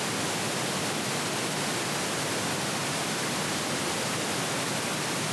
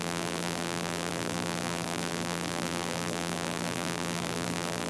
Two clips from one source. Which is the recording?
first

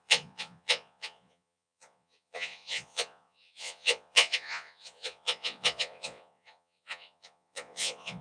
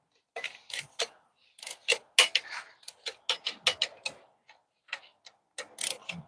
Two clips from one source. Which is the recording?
second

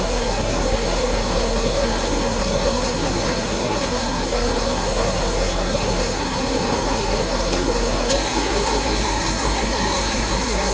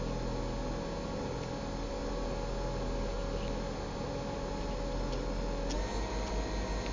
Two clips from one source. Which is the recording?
second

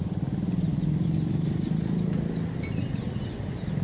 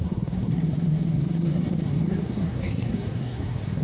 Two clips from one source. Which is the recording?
first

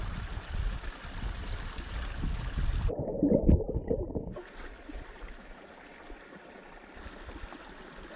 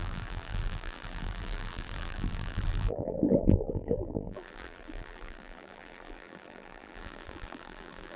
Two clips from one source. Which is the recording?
first